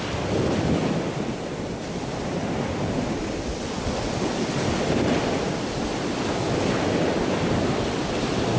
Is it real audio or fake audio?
real